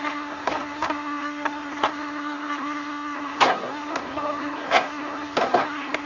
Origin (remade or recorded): remade